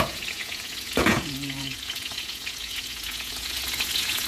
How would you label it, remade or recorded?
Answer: remade